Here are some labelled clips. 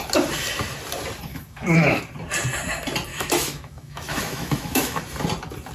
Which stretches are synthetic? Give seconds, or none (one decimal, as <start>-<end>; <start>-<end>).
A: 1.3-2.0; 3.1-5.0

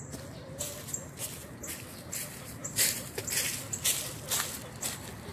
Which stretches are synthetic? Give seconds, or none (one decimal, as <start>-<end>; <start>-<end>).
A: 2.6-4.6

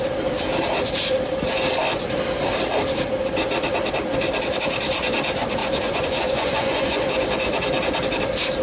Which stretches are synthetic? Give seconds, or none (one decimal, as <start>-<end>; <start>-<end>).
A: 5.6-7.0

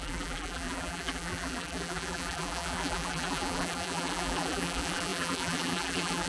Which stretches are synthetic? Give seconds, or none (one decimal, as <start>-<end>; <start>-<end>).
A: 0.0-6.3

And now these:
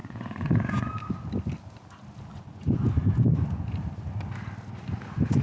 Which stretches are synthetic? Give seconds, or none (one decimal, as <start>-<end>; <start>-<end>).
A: 0.0-0.9; 2.3-3.6

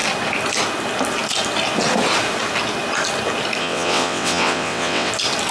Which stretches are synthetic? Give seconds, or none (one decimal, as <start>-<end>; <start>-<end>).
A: 3.6-5.1